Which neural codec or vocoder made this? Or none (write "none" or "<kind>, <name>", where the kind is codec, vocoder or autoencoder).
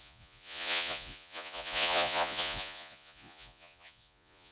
vocoder, Vocos